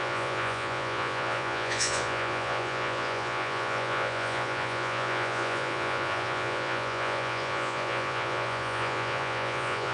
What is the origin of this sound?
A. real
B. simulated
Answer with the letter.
B